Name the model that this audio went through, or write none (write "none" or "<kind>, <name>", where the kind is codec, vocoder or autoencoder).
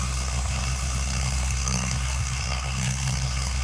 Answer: codec, SNAC